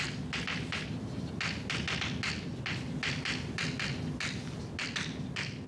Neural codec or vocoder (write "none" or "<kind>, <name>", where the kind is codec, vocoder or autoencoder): none